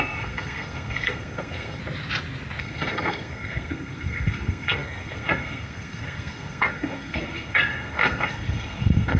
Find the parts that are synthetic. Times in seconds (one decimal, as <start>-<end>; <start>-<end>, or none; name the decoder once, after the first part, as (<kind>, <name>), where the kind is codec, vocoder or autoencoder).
0.0-1.8 (codec, SNAC); 2.6-9.2